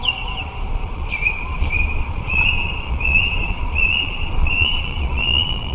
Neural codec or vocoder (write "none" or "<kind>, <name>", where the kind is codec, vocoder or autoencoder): vocoder, Vocos